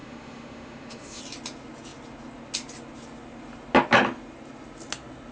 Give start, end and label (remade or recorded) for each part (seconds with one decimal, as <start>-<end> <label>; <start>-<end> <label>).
0.0-1.2 remade; 1.2-5.3 recorded